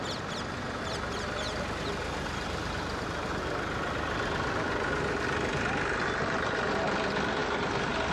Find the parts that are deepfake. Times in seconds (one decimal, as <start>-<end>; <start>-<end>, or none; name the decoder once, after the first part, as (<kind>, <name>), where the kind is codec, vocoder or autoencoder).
none